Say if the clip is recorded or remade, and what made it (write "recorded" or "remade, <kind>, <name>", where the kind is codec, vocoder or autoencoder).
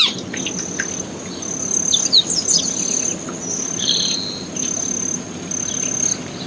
recorded